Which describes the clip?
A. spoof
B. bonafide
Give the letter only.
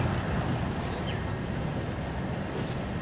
B